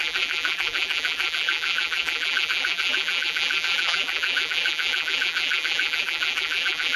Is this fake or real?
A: fake